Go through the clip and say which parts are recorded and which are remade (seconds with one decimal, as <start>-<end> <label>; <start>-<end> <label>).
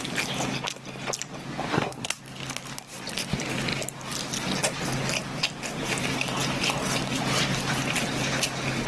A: 0.0-1.7 recorded; 1.7-2.2 remade; 2.2-8.9 recorded